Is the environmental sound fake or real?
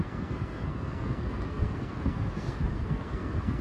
fake